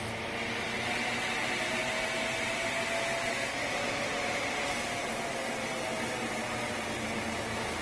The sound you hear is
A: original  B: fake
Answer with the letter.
A